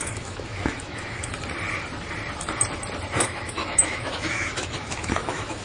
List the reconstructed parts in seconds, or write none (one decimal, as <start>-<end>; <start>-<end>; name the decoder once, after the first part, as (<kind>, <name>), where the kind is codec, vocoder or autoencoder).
0.0-1.3 (autoencoder, DAC-VAE); 3.2-5.6